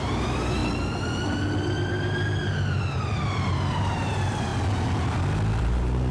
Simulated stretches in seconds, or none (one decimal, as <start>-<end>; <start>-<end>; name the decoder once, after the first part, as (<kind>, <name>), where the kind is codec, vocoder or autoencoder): 0.0-0.6 (vocoder, BigVGAN v2); 2.5-4.5; 5.6-6.1

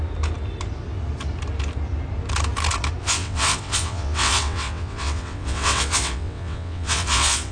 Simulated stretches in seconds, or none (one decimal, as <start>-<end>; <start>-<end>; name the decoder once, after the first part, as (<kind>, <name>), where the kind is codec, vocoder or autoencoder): 3.0-7.5 (vocoder, WaveNeXt)

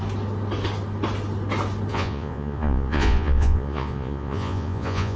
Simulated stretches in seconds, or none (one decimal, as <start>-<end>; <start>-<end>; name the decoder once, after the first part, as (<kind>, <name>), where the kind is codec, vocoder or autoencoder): 1.9-5.2 (vocoder, Vocos)